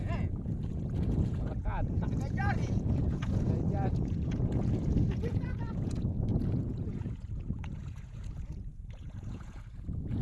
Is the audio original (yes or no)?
no